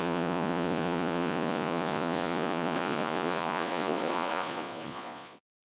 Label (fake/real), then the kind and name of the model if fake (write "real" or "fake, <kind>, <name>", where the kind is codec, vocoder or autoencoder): fake, vocoder, Vocos